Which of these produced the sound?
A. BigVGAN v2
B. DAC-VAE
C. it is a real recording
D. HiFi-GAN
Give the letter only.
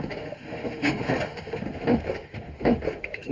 B